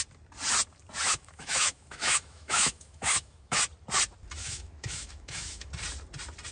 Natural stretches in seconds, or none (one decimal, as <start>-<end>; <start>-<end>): 0.0-1.1; 3.6-4.4; 5.7-6.5